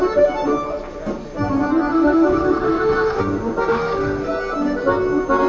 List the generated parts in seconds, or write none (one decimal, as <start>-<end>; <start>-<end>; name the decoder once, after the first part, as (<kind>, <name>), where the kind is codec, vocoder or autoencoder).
1.9-3.2 (autoencoder, DAC-VAE); 3.7-4.3